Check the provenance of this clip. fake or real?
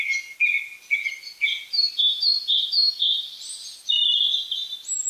real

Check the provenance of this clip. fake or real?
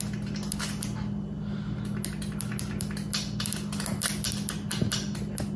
real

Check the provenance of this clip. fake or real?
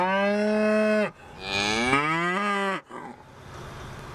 real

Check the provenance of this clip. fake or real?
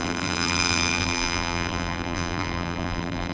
fake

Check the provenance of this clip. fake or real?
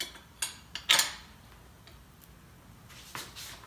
real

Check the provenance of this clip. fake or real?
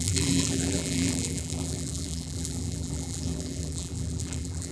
fake